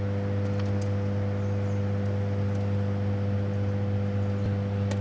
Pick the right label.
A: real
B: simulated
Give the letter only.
A